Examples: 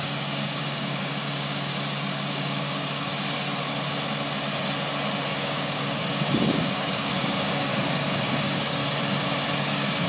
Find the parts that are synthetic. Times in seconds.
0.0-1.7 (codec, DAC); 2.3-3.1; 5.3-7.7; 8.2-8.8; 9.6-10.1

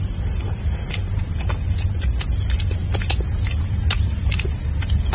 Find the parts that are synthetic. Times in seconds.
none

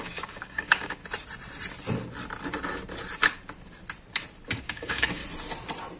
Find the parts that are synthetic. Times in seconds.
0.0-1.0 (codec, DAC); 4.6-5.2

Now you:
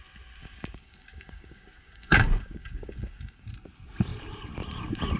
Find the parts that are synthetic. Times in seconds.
0.4-3.5 (codec, DAC)

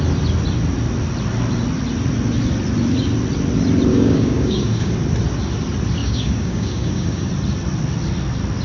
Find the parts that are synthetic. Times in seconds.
3.9-4.9 (codec, DAC); 6.0-7.3